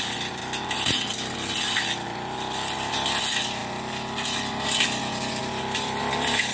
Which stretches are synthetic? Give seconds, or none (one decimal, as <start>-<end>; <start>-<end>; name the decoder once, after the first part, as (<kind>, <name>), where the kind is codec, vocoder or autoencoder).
0.0-0.4 (vocoder, BigVGAN v2); 1.6-3.6; 5.4-6.5